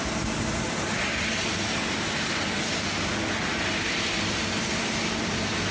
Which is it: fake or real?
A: real